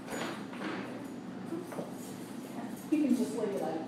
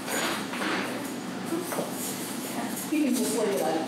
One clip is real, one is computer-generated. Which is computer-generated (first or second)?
second